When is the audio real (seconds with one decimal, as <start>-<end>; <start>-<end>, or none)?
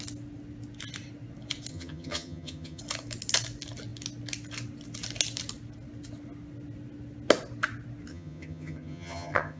0.0-1.7; 2.8-8.1